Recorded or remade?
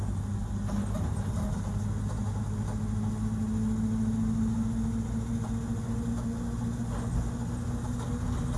recorded